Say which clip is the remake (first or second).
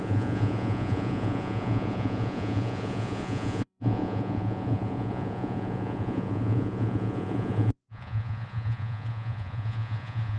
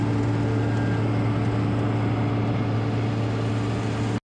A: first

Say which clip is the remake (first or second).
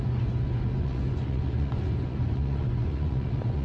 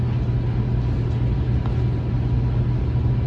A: first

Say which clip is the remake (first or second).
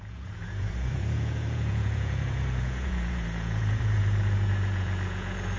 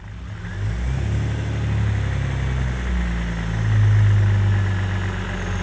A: first